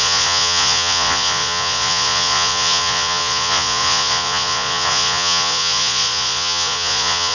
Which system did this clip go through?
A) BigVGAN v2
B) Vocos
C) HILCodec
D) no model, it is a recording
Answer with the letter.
B